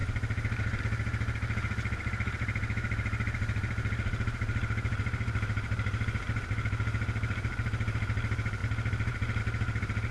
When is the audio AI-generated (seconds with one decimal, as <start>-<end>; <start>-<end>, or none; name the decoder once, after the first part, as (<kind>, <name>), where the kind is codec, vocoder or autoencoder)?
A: 0.0-10.1 (vocoder, BigVGAN v2)